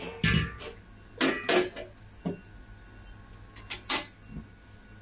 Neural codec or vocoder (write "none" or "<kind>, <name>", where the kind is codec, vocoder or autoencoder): none